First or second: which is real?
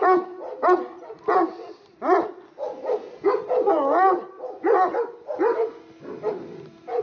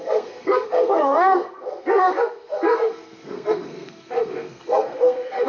first